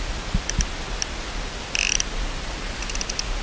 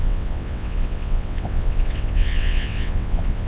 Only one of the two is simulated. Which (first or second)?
second